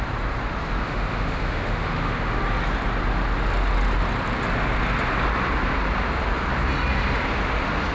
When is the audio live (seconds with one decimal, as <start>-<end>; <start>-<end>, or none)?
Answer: 0.0-0.8; 2.4-7.9